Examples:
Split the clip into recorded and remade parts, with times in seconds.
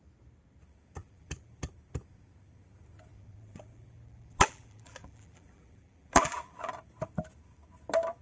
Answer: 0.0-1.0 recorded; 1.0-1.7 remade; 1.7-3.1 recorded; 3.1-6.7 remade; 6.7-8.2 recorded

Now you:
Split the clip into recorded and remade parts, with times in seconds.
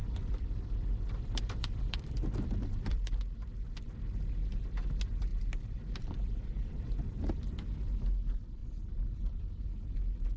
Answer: 0.0-3.2 remade; 3.2-5.3 recorded; 5.3-7.2 remade; 7.2-8.6 recorded; 8.6-9.6 remade; 9.6-10.4 recorded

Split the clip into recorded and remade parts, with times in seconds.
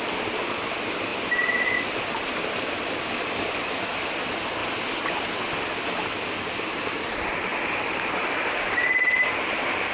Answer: 0.0-1.1 remade; 1.1-1.9 recorded; 1.9-4.6 remade; 4.6-6.0 recorded; 6.0-7.5 remade; 7.5-8.5 recorded; 8.5-9.9 remade